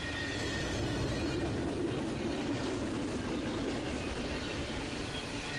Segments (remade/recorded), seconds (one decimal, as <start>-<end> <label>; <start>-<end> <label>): 0.0-1.6 remade; 1.6-3.7 recorded; 3.7-5.6 remade